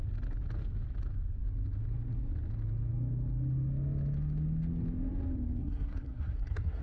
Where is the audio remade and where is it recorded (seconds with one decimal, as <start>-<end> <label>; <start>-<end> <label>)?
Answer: 0.0-5.6 recorded; 5.6-6.8 remade